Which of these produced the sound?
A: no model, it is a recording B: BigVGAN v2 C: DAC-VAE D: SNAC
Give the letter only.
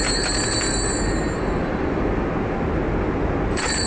A